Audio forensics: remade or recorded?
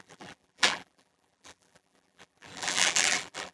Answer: remade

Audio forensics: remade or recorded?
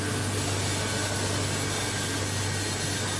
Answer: recorded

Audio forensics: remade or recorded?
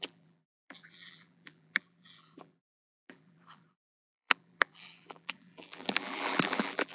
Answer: remade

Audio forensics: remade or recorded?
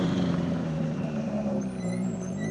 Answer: remade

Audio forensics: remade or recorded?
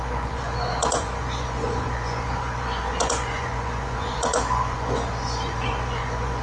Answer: remade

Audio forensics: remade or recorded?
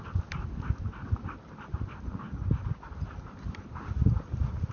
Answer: recorded